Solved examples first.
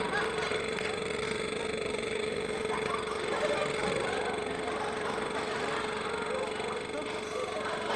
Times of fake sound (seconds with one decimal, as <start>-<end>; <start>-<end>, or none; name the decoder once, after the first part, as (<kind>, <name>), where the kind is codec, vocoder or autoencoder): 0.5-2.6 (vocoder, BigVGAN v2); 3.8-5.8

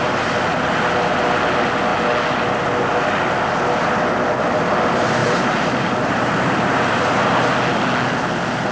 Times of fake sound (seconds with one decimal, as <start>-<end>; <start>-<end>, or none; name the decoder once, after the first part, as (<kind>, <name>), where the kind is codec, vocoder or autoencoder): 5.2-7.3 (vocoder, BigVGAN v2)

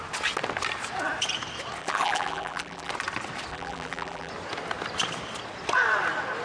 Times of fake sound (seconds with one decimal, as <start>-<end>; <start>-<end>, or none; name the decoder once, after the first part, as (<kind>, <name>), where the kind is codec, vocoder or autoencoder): 1.8-2.9 (vocoder, BigVGAN v2); 3.5-4.3

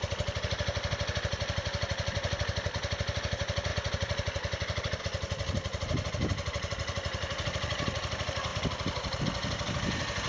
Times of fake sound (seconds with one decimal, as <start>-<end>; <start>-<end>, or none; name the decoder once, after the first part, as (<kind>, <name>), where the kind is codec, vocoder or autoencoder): 3.7-5.0 (vocoder, BigVGAN v2); 8.5-9.2

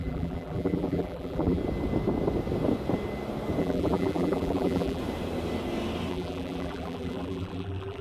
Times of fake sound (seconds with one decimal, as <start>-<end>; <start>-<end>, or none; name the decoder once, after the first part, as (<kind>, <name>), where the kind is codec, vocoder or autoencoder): 0.0-1.6 (vocoder, BigVGAN v2); 3.6-5.0; 6.1-8.0